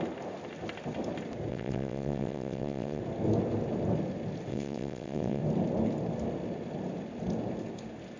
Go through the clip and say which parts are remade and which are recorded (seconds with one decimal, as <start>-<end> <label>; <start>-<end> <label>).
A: 0.0-1.5 recorded; 1.5-3.0 remade; 3.0-4.5 recorded; 4.5-5.4 remade; 5.4-8.2 recorded